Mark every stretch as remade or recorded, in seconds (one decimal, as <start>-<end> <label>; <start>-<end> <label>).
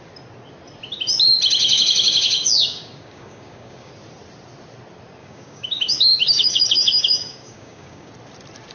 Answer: 0.0-1.6 recorded; 1.6-3.9 remade; 3.9-5.2 recorded; 5.2-8.1 remade; 8.1-8.7 recorded